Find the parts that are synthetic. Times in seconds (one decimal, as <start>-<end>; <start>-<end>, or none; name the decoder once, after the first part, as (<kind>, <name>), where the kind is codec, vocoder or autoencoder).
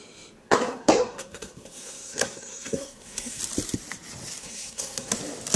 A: 0.4-3.4 (codec, SNAC); 4.4-5.1